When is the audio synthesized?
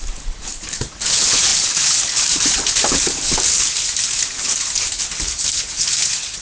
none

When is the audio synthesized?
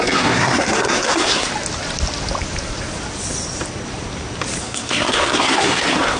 0.0-1.5 (codec, SNAC); 4.6-6.2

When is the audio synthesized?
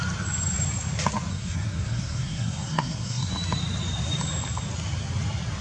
1.3-3.3 (codec, SNAC)